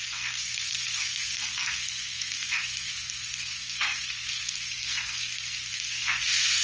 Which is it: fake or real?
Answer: fake